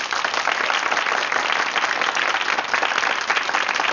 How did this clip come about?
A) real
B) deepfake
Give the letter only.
A